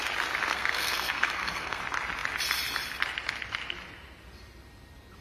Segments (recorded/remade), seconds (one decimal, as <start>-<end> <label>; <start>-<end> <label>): 0.0-0.5 recorded; 0.5-1.8 remade; 1.8-5.2 recorded